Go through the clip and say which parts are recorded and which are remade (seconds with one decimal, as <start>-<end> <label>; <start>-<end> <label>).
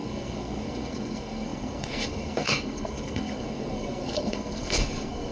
0.0-5.3 remade